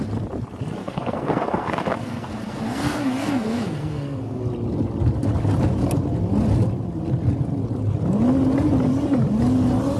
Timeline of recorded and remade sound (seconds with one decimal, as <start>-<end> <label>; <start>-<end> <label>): 0.0-0.8 recorded; 0.8-4.4 remade; 4.4-10.0 recorded